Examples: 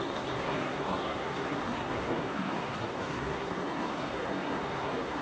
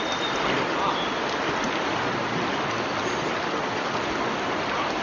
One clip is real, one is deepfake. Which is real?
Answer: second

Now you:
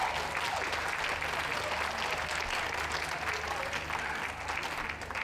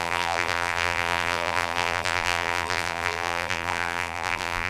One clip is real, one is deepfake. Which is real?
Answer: first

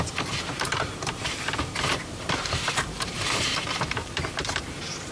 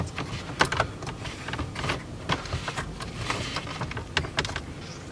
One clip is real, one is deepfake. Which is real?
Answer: second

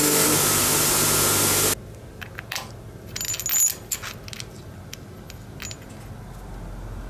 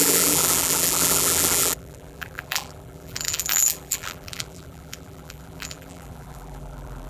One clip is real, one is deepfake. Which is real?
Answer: first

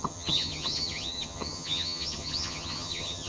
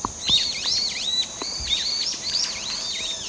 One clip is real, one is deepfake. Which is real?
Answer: second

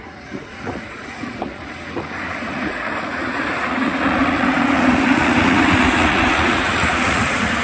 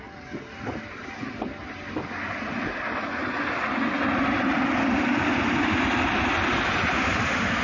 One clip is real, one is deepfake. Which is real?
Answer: second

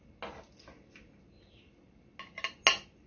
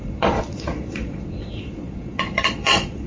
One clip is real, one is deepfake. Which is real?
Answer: first